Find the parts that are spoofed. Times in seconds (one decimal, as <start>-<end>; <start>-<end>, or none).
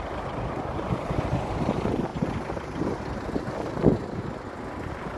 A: none